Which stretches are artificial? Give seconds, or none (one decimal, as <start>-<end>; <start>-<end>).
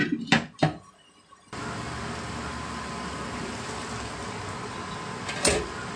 none